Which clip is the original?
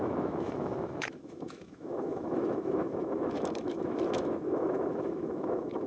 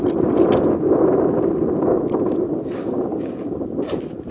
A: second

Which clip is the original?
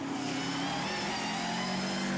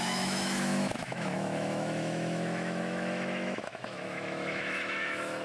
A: first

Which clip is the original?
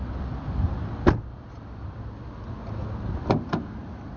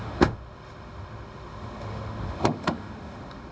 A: first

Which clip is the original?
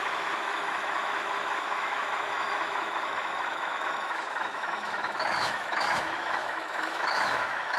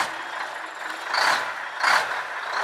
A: second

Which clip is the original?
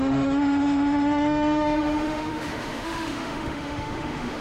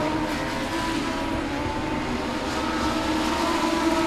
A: second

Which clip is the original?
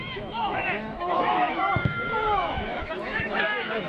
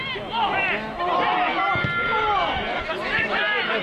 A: second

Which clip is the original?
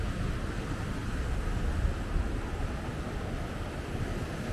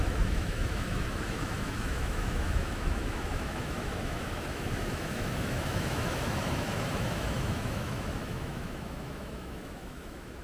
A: first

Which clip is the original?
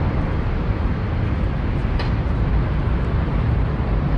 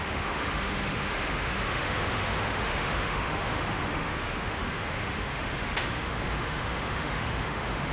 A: first